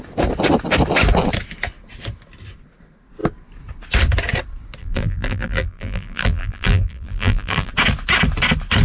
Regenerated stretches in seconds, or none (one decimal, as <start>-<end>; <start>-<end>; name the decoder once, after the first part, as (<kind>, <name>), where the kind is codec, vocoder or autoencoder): 4.8-7.7 (vocoder, BigVGAN v2)